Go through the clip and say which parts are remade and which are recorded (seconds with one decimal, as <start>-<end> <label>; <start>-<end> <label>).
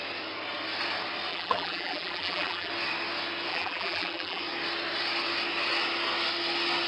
0.0-1.3 recorded; 1.3-2.7 remade; 2.7-3.5 recorded; 3.5-4.4 remade; 4.4-6.9 recorded